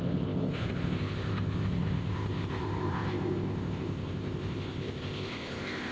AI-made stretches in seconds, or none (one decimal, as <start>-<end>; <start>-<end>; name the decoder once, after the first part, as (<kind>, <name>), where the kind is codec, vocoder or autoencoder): 0.0-5.9 (codec, ZipCodec)